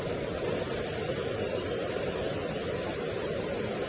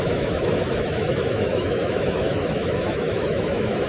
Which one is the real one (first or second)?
first